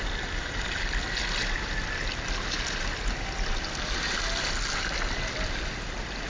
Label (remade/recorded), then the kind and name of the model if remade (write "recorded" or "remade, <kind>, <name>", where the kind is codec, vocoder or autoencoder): recorded